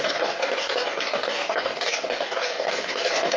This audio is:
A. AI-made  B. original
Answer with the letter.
A